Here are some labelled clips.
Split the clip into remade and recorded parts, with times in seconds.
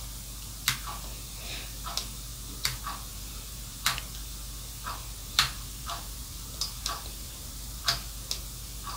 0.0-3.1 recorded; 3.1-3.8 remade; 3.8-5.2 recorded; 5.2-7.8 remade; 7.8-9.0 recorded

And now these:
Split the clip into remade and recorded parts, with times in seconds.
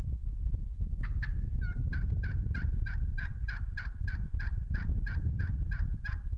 0.0-6.4 recorded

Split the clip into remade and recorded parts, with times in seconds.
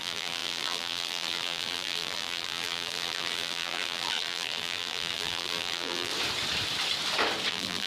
0.0-6.1 remade; 6.1-7.5 recorded; 7.5-7.9 remade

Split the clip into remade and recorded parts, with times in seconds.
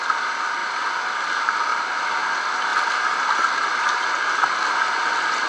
0.0-5.5 recorded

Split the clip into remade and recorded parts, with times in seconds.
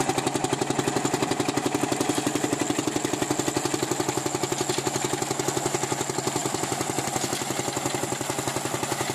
0.0-6.4 recorded; 6.4-7.2 remade; 7.2-9.1 recorded